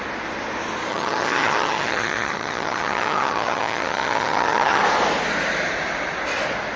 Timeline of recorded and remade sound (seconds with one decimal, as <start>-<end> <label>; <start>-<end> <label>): 0.0-0.9 recorded; 0.9-4.8 remade; 4.8-6.8 recorded